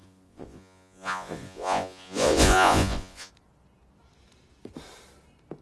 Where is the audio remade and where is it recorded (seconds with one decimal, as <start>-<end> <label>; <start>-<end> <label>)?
0.0-3.3 remade; 3.3-5.6 recorded